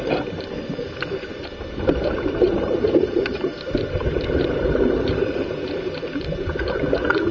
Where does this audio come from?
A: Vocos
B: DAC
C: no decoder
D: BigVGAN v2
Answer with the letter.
D